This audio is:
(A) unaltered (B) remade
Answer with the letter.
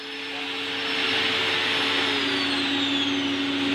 A